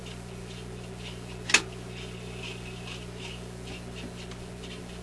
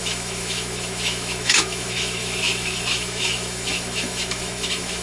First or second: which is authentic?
first